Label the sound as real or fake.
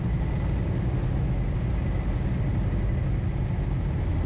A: real